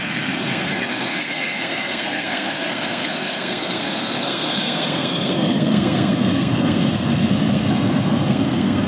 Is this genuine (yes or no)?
no